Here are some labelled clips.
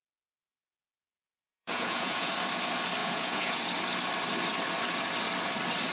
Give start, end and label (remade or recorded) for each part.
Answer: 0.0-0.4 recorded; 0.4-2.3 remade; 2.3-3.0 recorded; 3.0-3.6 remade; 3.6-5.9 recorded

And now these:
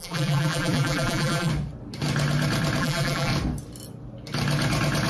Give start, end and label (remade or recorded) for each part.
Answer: 0.0-1.5 remade; 1.5-2.8 recorded; 2.8-3.3 remade; 3.3-5.1 recorded

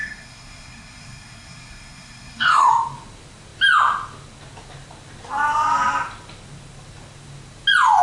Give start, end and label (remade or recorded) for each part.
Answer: 0.0-2.7 remade; 2.7-8.0 recorded

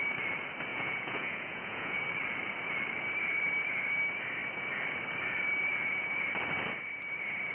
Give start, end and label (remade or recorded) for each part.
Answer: 0.0-0.7 recorded; 0.7-2.0 remade; 2.0-7.5 recorded

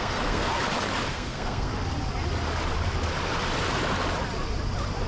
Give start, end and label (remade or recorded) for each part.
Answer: 0.0-0.5 remade; 0.5-1.1 recorded; 1.1-1.7 remade; 1.7-5.1 recorded